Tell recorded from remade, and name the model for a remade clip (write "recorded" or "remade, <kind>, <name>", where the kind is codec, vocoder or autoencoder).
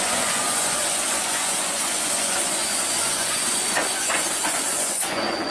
remade, vocoder, Vocos